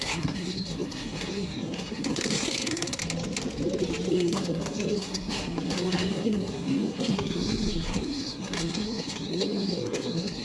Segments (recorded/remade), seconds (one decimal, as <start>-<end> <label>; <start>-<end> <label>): 0.0-3.0 remade; 3.0-4.1 recorded; 4.1-10.4 remade